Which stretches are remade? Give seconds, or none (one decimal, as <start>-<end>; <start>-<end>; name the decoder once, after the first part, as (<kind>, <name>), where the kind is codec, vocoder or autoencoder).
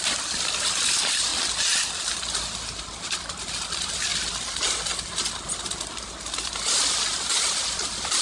0.0-1.3 (vocoder, BigVGAN v2); 3.4-4.1; 5.6-8.2